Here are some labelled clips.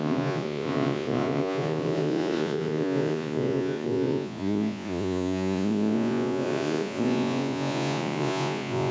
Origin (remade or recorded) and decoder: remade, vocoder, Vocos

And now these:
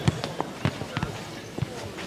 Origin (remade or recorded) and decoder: recorded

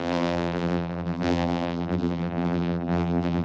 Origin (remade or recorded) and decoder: remade, vocoder, BigVGAN v2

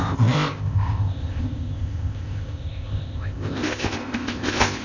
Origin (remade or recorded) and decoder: remade, codec, ZipCodec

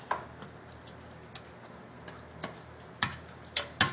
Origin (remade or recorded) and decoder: recorded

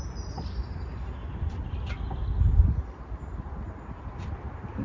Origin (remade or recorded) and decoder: recorded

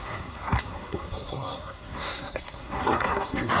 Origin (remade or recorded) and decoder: remade, codec, SNAC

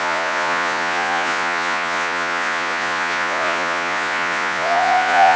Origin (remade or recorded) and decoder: remade, vocoder, Vocos